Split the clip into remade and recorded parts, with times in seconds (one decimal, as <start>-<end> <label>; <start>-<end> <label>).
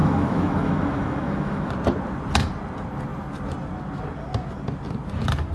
0.0-1.7 remade; 1.7-5.5 recorded